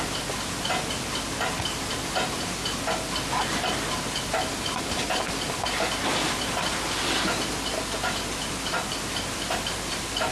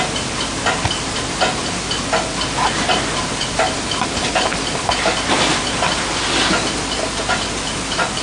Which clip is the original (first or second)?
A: second